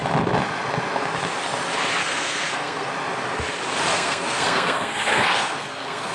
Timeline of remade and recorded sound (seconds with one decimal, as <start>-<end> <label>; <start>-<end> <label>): 0.0-2.0 recorded; 2.0-2.9 remade; 2.9-3.9 recorded; 3.9-6.1 remade